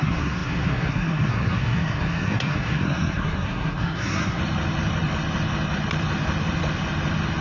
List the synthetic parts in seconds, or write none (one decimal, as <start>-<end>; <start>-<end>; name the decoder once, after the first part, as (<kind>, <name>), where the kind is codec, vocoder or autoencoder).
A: 0.0-4.4 (codec, SNAC)